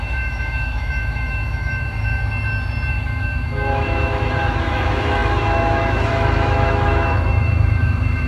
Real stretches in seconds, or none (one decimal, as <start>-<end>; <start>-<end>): 2.2-2.9